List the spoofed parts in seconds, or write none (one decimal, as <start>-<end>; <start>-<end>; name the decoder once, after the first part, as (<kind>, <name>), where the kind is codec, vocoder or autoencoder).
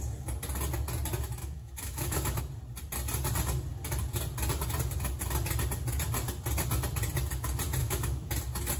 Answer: 1.4-2.4 (autoencoder, DAC-VAE); 7.8-8.3